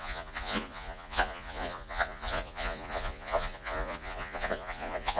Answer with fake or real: fake